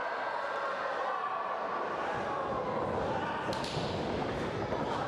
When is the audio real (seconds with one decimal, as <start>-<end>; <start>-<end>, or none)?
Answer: 0.0-5.1